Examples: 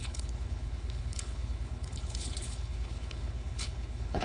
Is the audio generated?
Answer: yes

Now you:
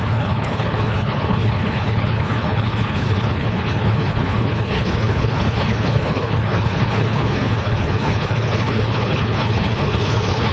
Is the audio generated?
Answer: yes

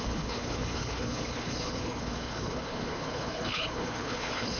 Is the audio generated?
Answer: yes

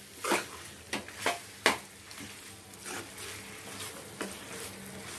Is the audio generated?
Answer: no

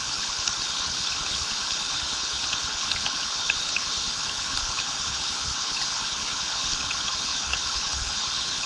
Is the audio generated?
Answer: yes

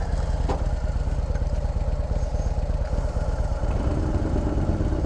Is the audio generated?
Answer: no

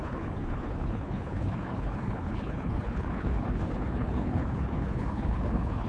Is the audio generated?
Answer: yes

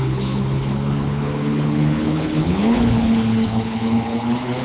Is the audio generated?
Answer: yes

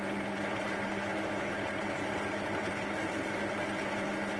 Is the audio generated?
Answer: no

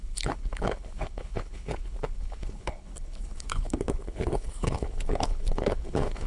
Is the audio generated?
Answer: yes